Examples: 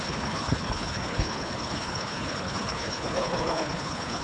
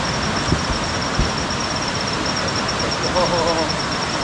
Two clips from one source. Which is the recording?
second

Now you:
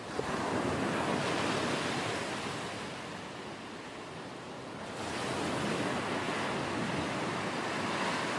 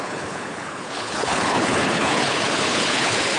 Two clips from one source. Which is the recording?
first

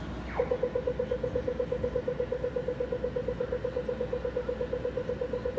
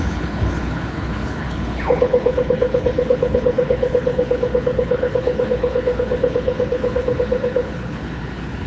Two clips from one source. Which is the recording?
first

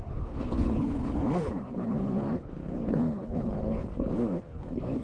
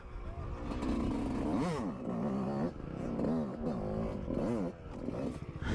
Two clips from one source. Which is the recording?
second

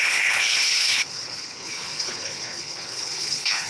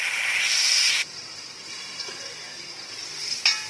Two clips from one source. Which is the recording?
second